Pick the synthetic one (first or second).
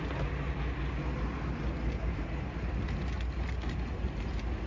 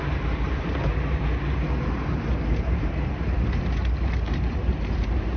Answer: second